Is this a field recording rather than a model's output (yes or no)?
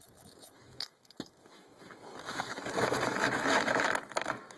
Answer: no